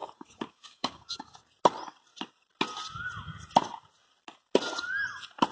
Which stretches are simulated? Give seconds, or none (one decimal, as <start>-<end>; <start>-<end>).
0.0-1.4